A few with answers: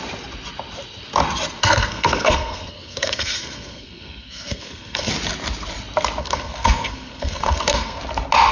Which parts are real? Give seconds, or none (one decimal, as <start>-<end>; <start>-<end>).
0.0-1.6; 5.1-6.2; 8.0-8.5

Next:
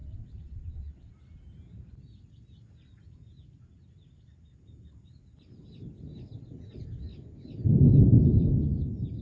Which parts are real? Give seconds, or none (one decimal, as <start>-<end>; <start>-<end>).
1.1-9.2

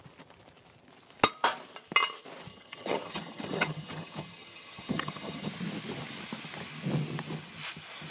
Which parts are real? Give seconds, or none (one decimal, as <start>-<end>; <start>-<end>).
0.0-2.5; 5.5-8.1

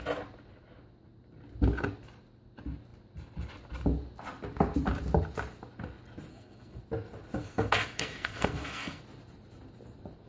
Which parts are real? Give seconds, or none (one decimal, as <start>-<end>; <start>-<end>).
0.0-6.3; 6.8-7.4; 9.0-10.3